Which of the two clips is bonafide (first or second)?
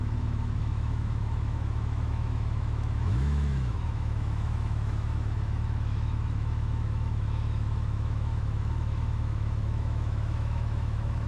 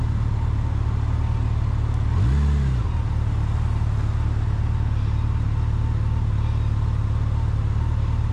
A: second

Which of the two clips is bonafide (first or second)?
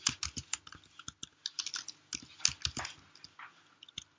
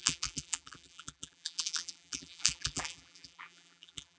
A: first